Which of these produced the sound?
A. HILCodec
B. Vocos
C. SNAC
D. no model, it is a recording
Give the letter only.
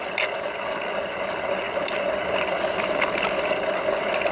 D